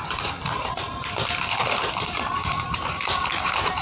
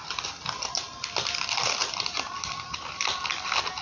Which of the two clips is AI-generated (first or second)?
first